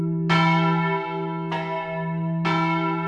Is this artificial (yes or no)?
no